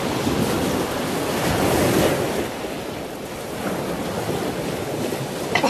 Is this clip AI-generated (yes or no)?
no